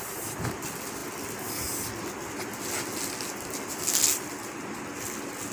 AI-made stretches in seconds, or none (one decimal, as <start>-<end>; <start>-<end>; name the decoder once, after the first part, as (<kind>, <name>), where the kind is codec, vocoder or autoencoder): none